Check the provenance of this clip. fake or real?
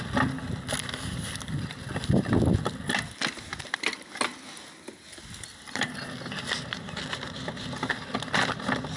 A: real